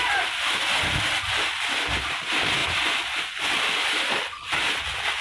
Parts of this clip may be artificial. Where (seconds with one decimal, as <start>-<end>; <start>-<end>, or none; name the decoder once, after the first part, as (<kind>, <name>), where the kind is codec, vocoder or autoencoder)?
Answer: none